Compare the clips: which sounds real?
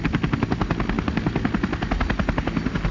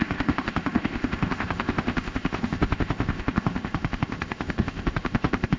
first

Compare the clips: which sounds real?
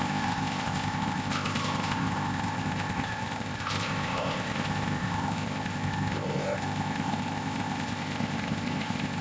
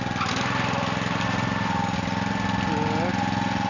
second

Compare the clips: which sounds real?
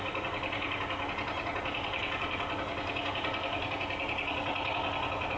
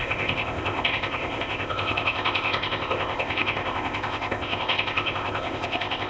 first